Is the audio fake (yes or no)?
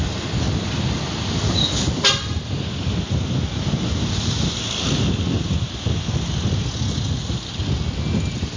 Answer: no